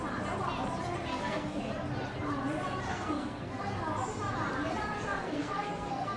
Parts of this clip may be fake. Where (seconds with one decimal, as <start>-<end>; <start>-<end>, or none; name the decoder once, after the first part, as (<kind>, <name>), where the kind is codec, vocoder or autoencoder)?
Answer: 1.1-1.6 (codec, SNAC); 2.9-3.6; 5.2-6.2